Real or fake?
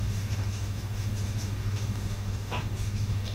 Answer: fake